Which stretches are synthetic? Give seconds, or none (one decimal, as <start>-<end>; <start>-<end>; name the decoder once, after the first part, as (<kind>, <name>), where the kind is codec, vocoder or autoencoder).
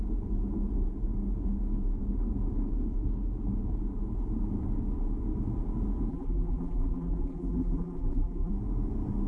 6.1-8.5 (vocoder, BigVGAN v2)